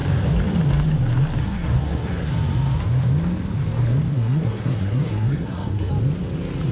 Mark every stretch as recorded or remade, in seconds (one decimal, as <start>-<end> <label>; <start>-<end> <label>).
0.0-1.4 recorded; 1.4-2.3 remade; 2.3-4.1 recorded; 4.1-5.9 remade; 5.9-6.7 recorded